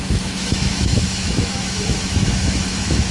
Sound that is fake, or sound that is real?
fake